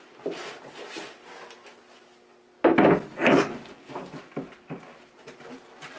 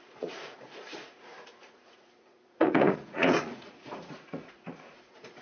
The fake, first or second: second